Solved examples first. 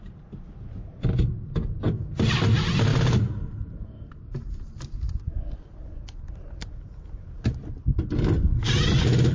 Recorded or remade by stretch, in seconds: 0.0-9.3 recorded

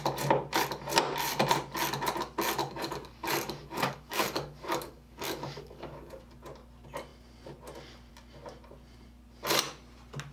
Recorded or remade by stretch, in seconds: 0.0-2.6 recorded; 2.6-6.2 remade; 6.2-10.3 recorded

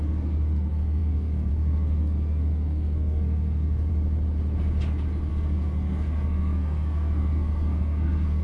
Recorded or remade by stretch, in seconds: 0.0-3.9 remade; 3.9-5.3 recorded; 5.3-8.4 remade

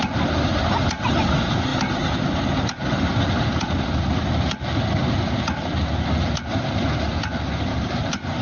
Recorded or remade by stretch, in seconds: 0.0-7.7 recorded; 7.7-8.4 remade

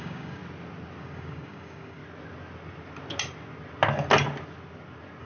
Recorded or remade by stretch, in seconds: 0.0-0.4 remade; 0.4-1.0 recorded; 1.0-2.0 remade; 2.0-5.2 recorded

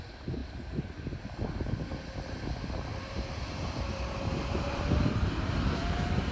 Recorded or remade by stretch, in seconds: 0.0-2.9 recorded; 2.9-6.3 remade

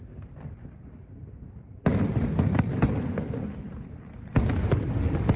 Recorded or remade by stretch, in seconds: 0.0-1.9 recorded; 1.9-4.3 remade; 4.3-5.4 recorded

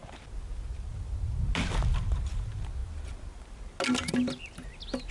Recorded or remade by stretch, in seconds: 0.0-5.1 recorded